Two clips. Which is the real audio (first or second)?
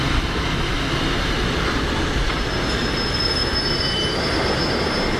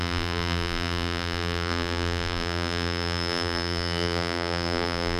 first